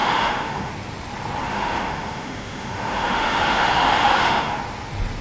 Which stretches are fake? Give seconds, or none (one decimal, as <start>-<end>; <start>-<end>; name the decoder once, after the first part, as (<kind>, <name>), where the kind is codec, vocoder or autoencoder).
0.0-0.7 (autoencoder, DAC-VAE); 1.5-4.6